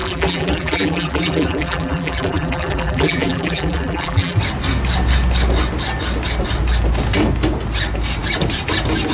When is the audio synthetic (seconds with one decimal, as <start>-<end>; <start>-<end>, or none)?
0.0-4.4